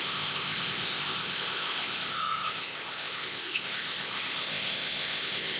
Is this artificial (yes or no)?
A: yes